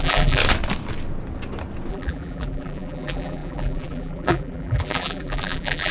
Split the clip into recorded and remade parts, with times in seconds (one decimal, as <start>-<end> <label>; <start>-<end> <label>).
0.0-0.4 remade; 0.4-1.9 recorded; 1.9-5.9 remade